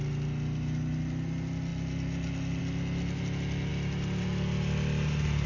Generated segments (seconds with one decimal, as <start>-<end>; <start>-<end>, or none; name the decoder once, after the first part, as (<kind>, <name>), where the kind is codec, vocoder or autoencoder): none